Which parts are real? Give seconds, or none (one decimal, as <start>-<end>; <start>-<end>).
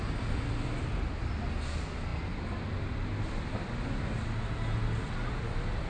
0.0-5.9